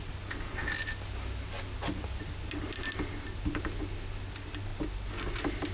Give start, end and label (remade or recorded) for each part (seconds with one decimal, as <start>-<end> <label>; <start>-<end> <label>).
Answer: 0.0-5.7 recorded